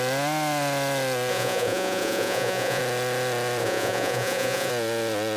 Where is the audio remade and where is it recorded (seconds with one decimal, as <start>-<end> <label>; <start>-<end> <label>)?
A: 0.0-1.3 recorded; 1.3-2.8 remade; 2.8-3.6 recorded; 3.6-4.7 remade; 4.7-5.4 recorded